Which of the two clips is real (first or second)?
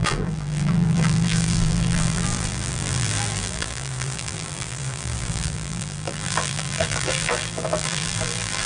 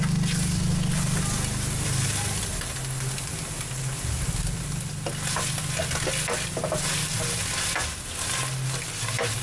second